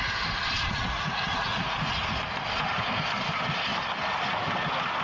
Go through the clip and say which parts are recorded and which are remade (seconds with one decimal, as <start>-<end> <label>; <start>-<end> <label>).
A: 0.0-0.7 recorded; 0.7-2.0 remade; 2.0-5.0 recorded